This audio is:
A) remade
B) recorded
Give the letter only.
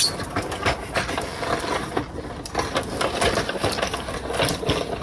B